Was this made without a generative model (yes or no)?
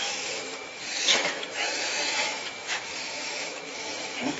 no